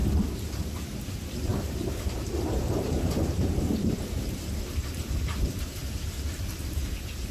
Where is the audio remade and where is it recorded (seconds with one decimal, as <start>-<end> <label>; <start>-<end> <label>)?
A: 0.0-1.1 recorded; 1.1-5.8 remade; 5.8-6.4 recorded; 6.4-7.3 remade